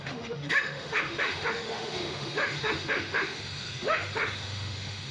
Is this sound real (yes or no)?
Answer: no